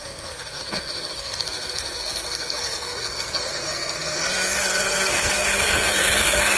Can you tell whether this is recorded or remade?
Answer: remade